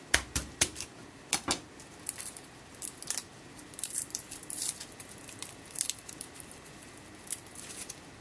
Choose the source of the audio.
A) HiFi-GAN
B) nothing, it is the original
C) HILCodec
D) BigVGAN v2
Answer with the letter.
D